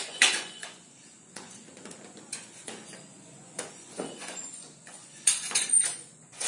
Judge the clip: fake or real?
fake